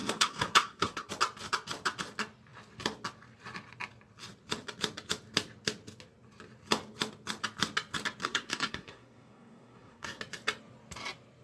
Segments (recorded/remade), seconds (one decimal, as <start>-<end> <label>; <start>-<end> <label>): 0.0-1.1 remade; 1.1-8.2 recorded; 8.2-10.2 remade; 10.2-11.4 recorded